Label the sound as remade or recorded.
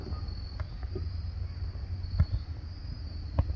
recorded